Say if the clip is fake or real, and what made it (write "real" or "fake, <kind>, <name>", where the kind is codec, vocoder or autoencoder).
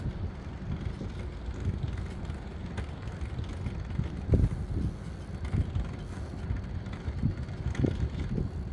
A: real